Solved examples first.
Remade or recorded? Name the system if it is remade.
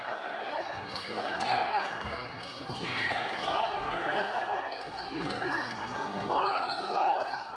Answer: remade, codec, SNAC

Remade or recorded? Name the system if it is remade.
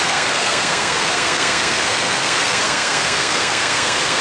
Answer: remade, codec, SNAC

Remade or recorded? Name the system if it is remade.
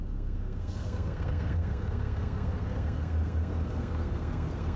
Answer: remade, codec, SNAC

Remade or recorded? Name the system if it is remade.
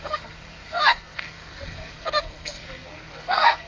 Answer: remade, codec, SNAC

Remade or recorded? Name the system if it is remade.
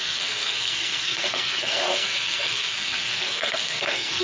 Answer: remade, codec, SNAC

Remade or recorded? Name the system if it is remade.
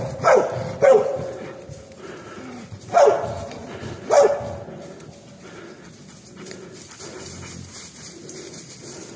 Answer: recorded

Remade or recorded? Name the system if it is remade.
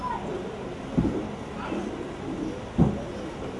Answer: recorded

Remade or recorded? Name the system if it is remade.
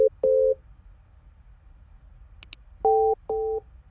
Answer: recorded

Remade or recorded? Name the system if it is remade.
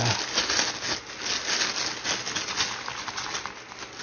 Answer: recorded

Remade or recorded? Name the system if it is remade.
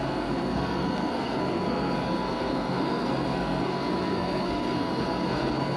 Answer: remade, codec, SNAC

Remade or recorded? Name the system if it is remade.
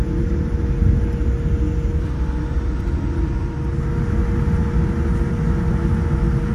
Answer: recorded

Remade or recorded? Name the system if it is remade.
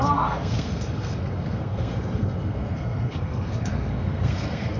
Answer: remade, codec, SNAC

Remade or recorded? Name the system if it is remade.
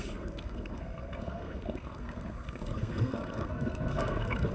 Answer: remade, codec, SNAC